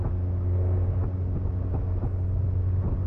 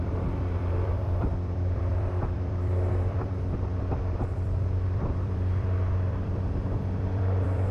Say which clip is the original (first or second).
first